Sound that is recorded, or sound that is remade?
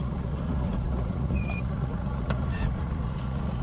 remade